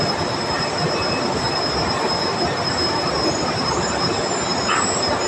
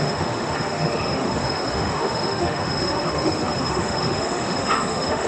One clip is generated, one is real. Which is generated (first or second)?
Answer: second